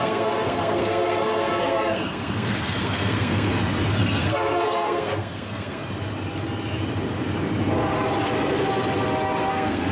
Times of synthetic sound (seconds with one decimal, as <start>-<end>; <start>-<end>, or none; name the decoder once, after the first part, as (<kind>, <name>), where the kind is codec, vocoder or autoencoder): 0.0-3.5 (codec, SNAC); 4.0-5.8; 9.5-9.9